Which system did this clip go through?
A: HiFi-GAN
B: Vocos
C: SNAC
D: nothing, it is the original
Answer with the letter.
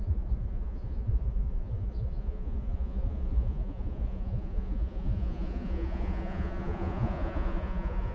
B